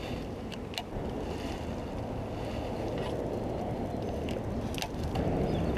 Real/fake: real